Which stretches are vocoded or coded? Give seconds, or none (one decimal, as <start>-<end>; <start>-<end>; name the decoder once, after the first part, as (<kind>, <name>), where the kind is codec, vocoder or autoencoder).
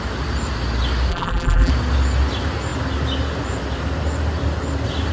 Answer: 1.1-1.7 (vocoder, BigVGAN v2)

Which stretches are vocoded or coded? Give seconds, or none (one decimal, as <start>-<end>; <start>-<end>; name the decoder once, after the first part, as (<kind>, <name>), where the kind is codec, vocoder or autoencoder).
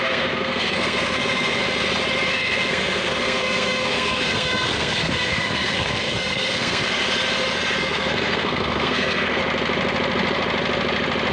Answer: 0.0-1.6 (codec, SNAC); 2.3-7.0; 7.8-9.4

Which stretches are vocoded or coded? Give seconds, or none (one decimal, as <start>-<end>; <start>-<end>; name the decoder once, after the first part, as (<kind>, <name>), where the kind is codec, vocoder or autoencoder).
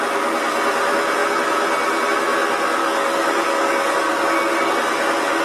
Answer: 2.8-4.7 (codec, DAC)